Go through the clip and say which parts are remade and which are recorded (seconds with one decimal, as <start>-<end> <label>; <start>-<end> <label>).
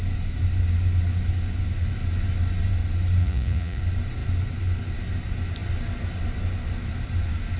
0.0-3.2 recorded; 3.2-3.8 remade; 3.8-7.6 recorded